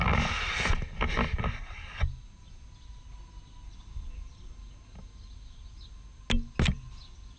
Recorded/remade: recorded